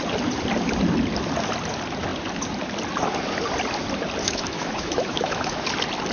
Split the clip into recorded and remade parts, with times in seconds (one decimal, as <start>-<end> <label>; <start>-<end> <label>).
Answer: 0.0-4.2 recorded; 4.2-5.6 remade; 5.6-6.1 recorded